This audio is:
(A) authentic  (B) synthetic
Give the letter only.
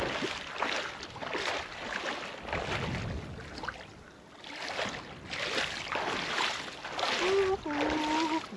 A